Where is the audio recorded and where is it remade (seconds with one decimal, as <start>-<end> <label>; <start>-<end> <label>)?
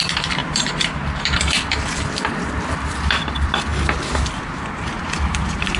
0.0-3.7 remade; 3.7-5.0 recorded; 5.0-5.8 remade